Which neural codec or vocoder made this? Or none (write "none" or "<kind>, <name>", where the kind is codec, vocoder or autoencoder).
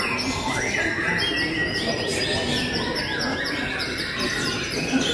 none